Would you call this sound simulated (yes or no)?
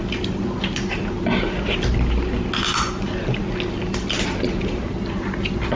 no